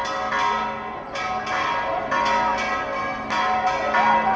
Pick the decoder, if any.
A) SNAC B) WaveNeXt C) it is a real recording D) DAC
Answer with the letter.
C